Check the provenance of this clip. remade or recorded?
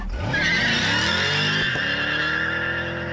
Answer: recorded